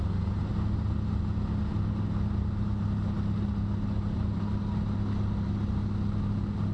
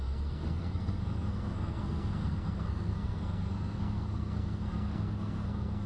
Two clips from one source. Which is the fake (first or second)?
second